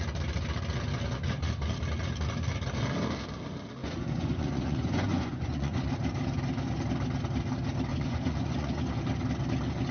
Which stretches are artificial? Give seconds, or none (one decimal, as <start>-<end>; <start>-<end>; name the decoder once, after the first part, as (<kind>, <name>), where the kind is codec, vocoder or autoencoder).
3.8-5.8 (vocoder, Vocos); 7.9-8.8